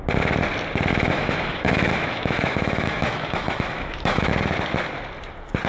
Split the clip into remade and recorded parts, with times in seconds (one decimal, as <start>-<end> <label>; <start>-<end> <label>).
0.0-0.9 recorded; 0.9-4.3 remade; 4.3-5.7 recorded